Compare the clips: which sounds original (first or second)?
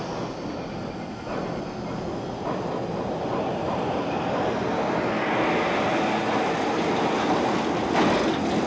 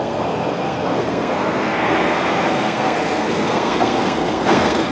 first